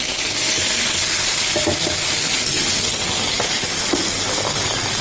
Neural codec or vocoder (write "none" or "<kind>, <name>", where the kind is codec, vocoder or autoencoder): none